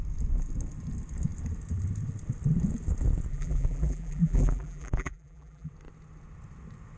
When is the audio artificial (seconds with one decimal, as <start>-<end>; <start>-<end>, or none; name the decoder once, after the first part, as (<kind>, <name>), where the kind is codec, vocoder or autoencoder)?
3.3-5.7 (vocoder, BigVGAN v2)